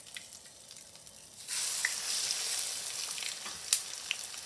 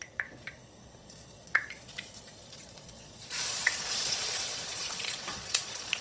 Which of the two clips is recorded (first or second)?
first